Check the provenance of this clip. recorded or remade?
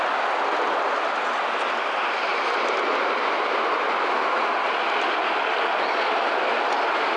recorded